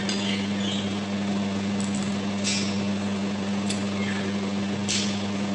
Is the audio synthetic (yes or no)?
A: no